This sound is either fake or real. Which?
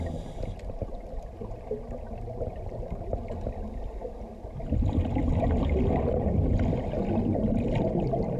real